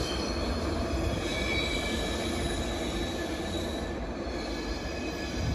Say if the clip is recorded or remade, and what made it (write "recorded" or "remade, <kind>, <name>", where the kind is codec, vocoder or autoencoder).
recorded